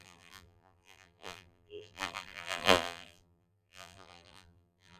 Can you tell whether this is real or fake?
fake